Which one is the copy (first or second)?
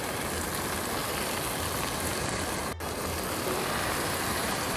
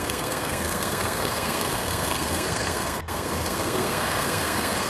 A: second